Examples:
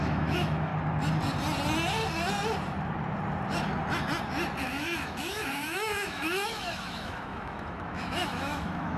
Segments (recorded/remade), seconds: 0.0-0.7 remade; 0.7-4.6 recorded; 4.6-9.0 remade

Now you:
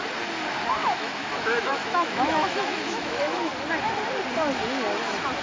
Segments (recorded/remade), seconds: 0.0-0.8 recorded; 0.8-3.5 remade; 3.5-5.4 recorded

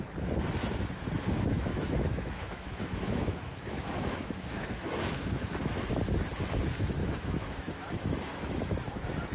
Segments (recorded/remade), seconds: 0.0-1.7 recorded; 1.7-5.9 remade; 5.9-7.0 recorded; 7.0-8.9 remade; 8.9-9.3 recorded

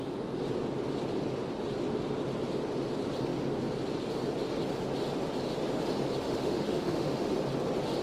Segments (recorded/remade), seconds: 0.0-6.2 recorded; 6.2-7.3 remade; 7.3-8.0 recorded

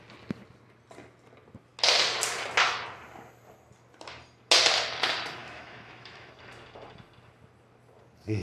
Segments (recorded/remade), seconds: 0.0-5.4 recorded; 5.4-6.3 remade; 6.3-8.4 recorded